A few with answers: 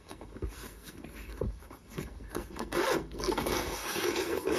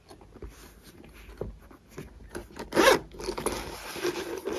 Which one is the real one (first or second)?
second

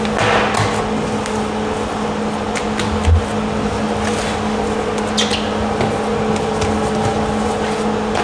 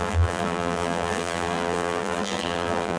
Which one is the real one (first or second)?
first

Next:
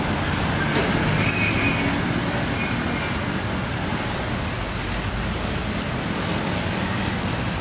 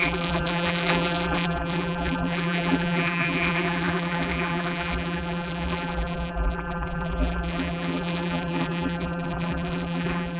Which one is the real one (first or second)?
first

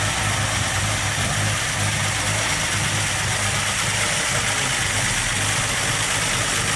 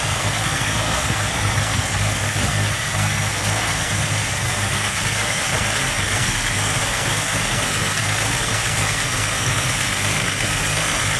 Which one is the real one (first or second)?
first